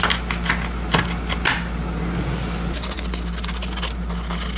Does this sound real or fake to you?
real